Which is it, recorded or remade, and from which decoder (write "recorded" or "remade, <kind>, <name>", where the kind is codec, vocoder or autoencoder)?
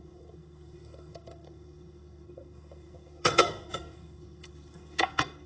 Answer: remade, codec, SNAC